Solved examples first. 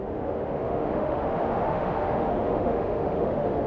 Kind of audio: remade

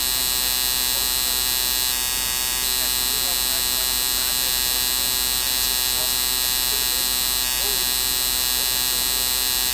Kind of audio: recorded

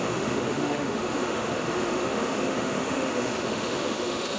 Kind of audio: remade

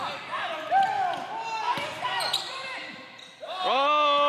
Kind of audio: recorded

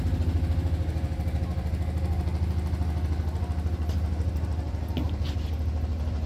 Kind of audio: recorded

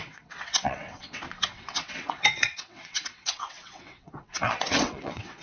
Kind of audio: remade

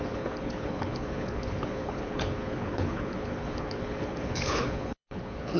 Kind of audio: remade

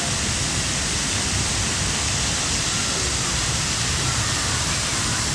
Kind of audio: recorded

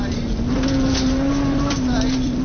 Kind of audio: remade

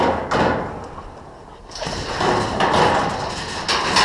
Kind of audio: recorded